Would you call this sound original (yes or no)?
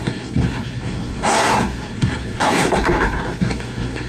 no